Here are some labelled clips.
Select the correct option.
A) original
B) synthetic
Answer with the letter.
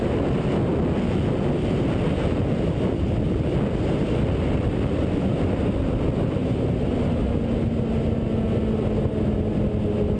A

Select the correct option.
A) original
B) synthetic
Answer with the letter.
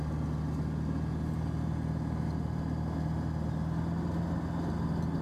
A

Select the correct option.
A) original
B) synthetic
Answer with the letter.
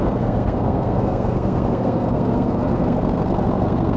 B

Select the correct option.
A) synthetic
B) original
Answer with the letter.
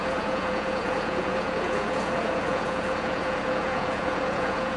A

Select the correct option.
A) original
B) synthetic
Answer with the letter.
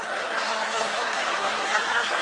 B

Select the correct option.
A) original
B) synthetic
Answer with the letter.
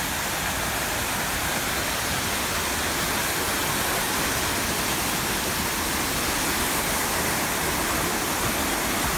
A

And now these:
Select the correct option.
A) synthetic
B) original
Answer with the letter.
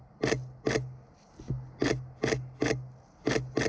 B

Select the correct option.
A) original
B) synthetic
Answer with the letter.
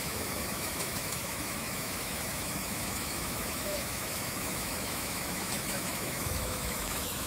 B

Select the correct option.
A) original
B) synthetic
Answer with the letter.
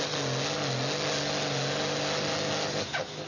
A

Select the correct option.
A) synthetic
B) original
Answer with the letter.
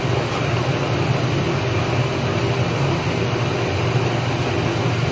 A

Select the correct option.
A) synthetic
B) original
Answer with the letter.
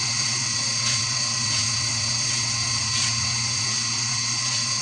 A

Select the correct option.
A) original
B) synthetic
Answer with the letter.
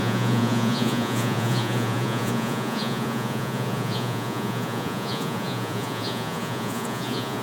B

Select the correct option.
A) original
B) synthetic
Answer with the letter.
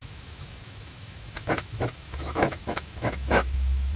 B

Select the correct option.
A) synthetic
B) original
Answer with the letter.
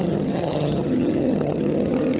A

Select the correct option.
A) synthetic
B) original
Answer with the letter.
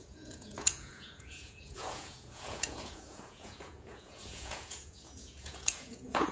A